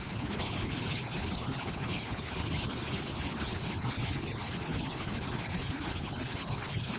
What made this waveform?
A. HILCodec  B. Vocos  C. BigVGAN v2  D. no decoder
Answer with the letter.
A